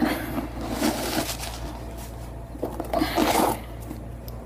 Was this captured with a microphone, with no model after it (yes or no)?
yes